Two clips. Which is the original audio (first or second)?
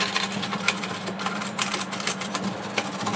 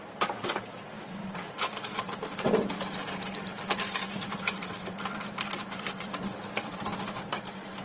first